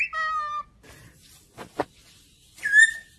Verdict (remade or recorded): recorded